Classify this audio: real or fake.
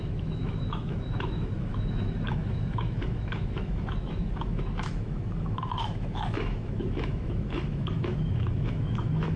fake